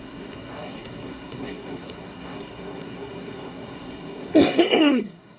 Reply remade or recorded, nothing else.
remade